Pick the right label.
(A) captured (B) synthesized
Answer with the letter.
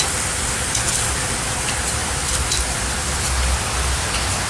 A